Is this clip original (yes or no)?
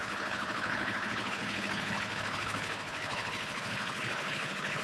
no